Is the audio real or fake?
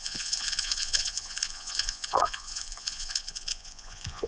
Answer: fake